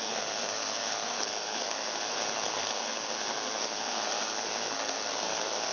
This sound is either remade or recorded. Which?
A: remade